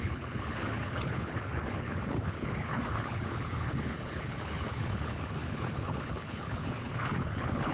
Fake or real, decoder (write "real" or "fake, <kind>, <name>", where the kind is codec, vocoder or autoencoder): fake, codec, HILCodec